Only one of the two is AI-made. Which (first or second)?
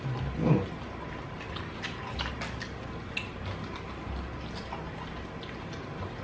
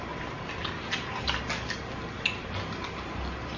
first